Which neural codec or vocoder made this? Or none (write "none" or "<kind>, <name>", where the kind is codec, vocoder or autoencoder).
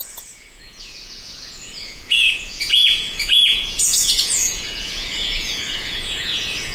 vocoder, Vocos